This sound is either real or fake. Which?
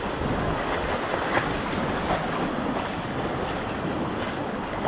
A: real